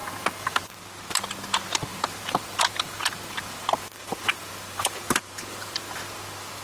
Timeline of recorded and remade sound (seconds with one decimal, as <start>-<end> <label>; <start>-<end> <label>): 0.0-0.6 remade; 0.6-1.9 recorded; 1.9-5.9 remade; 5.9-6.6 recorded